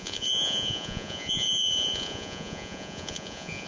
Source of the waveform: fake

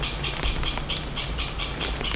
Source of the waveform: real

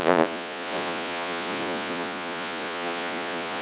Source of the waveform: fake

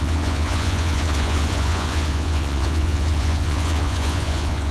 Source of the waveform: fake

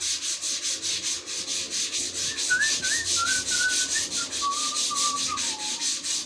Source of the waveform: real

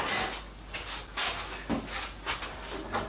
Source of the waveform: real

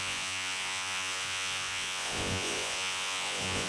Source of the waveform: fake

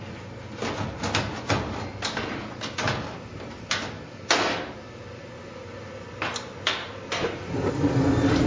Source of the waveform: real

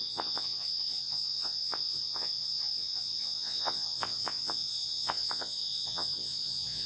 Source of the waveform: fake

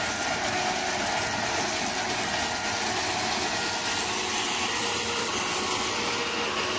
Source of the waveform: real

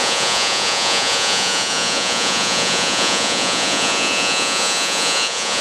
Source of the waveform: fake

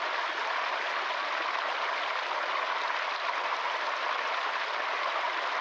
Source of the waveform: real